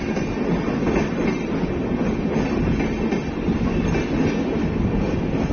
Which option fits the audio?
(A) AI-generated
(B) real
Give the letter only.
B